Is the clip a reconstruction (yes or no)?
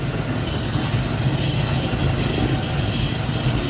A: no